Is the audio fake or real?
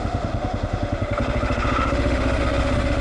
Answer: fake